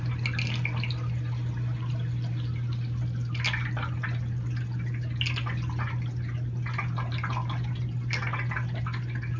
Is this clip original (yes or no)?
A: yes